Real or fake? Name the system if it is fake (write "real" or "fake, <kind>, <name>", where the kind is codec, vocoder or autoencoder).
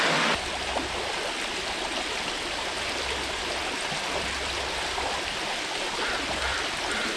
real